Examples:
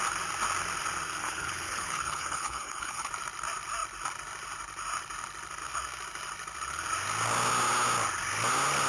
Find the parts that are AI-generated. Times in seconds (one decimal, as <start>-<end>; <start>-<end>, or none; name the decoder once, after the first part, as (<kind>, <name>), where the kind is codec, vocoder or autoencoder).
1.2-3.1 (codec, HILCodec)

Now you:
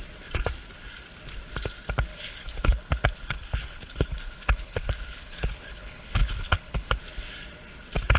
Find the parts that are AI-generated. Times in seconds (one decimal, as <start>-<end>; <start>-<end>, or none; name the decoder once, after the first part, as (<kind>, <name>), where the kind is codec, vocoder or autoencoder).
2.1-7.0 (codec, HILCodec)

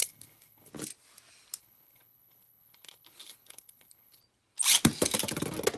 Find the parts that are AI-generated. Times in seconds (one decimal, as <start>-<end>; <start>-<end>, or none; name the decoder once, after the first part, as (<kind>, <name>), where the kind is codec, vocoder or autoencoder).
0.0-0.7 (codec, HILCodec); 1.6-4.2